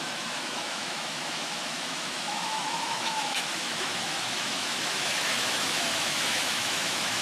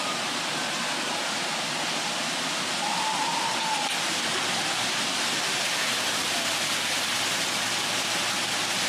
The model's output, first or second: first